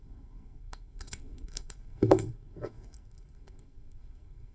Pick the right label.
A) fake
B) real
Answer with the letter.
A